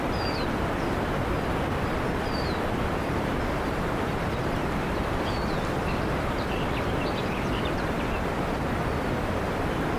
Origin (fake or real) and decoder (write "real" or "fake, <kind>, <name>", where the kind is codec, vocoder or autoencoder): fake, vocoder, BigVGAN v2